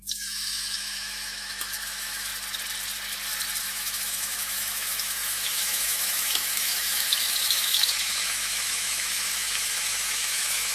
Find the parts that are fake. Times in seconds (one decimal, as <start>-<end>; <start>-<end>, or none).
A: 0.0-2.3; 3.6-10.7